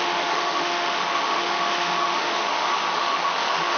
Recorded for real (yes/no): no